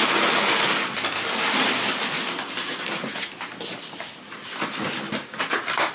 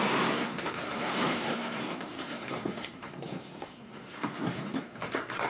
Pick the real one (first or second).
first